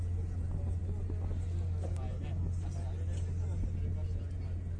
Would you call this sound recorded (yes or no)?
yes